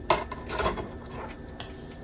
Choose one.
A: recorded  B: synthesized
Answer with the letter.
A